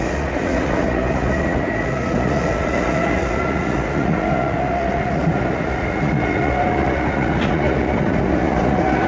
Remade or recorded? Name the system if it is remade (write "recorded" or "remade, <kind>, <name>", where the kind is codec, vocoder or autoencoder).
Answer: remade, vocoder, Vocos